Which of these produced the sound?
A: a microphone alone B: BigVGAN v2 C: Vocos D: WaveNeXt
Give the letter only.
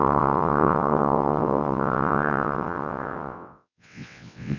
D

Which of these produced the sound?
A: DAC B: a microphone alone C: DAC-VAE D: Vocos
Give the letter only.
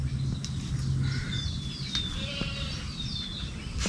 B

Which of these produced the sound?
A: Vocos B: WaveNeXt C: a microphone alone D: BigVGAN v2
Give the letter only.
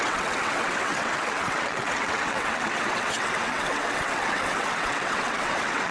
B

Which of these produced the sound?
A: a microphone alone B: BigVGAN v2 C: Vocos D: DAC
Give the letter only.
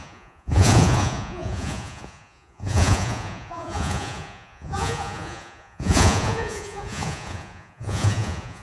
C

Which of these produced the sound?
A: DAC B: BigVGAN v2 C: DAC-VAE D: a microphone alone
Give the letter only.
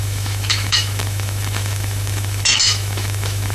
C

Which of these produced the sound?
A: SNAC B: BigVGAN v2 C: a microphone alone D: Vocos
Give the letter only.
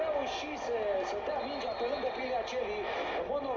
C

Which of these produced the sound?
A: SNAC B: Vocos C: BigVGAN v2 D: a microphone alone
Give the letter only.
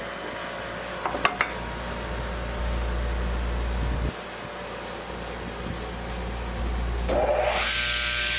D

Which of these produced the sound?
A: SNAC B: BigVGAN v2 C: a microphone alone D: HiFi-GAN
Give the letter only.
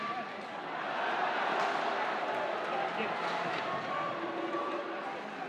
C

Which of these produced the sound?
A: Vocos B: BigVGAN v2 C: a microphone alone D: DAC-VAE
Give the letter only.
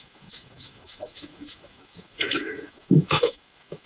D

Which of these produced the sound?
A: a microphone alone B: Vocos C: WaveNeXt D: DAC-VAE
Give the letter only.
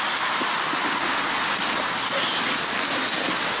A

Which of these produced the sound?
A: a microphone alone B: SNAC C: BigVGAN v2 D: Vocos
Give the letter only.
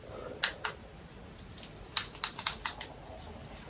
A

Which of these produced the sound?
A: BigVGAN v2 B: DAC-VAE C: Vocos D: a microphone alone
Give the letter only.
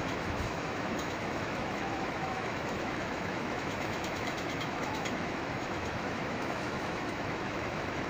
B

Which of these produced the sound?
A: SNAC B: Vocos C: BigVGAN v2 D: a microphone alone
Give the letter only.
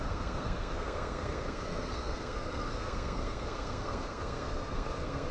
A